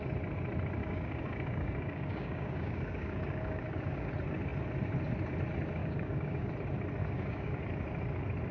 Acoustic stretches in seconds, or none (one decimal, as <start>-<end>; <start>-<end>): 0.0-0.8; 4.1-5.8; 6.5-7.0; 7.6-8.5